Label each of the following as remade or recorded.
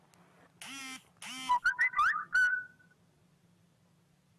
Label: recorded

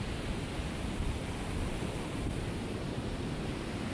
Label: remade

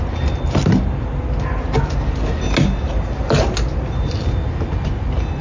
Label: recorded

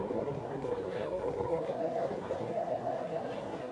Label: remade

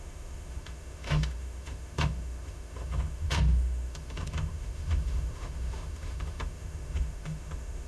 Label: remade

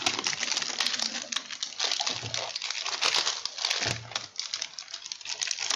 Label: recorded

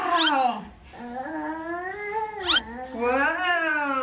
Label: recorded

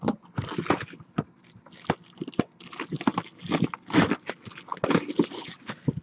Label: recorded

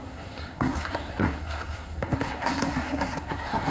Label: remade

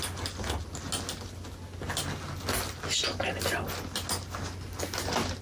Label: recorded